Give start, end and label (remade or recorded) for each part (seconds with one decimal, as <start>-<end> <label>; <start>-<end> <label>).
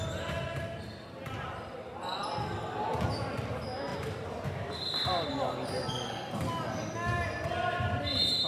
0.0-3.9 recorded; 3.9-5.9 remade; 5.9-8.5 recorded